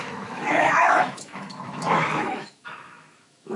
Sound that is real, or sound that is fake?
fake